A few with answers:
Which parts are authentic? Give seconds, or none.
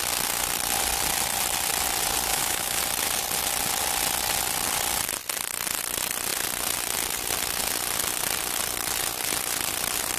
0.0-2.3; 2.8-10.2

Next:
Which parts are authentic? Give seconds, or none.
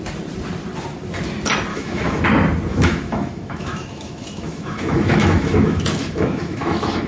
0.0-1.7; 2.2-2.7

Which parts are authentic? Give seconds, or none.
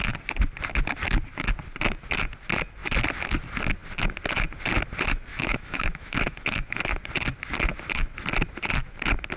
0.0-5.3; 6.8-9.4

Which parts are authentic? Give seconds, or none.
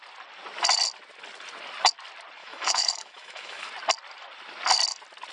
0.0-2.4; 3.7-5.3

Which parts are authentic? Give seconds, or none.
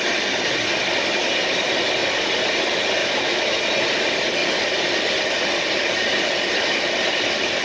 0.0-3.0; 3.6-7.6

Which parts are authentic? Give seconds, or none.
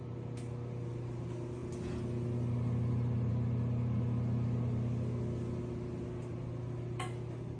0.0-7.6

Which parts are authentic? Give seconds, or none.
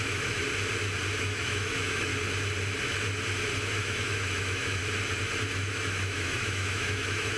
0.4-1.2; 2.1-3.8; 4.8-5.5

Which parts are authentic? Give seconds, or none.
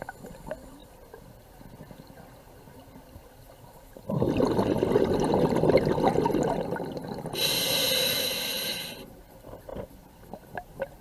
0.0-8.0; 8.8-11.0